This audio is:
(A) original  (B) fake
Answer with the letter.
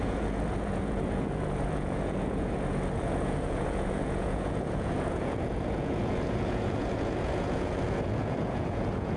B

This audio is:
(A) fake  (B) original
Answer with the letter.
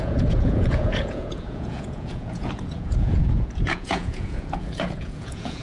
A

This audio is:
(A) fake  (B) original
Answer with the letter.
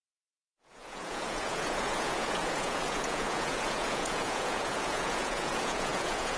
A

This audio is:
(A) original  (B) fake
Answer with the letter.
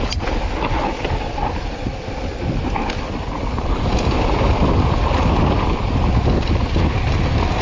A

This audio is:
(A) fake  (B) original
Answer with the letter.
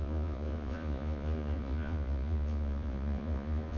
A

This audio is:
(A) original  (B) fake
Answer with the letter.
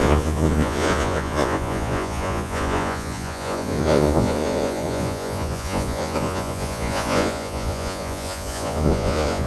B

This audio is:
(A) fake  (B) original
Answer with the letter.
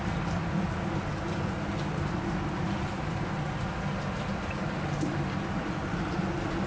B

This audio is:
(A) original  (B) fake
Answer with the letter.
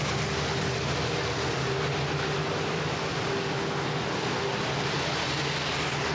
A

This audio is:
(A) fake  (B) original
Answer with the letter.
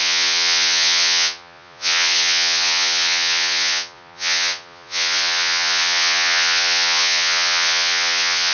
A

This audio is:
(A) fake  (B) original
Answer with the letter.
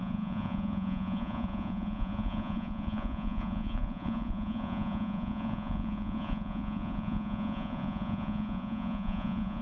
A